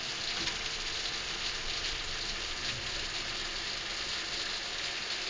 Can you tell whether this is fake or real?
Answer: real